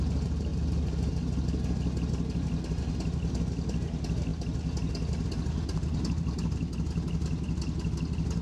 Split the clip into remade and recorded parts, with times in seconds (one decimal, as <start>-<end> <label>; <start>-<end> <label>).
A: 0.0-8.4 recorded